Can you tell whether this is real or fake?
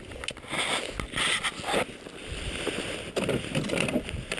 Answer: real